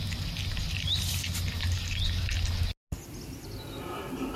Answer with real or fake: real